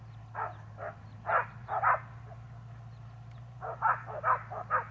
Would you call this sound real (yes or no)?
yes